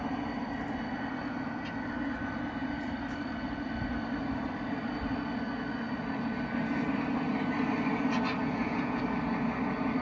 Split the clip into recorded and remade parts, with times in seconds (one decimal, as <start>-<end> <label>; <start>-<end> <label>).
0.0-8.4 recorded; 8.4-9.0 remade; 9.0-10.0 recorded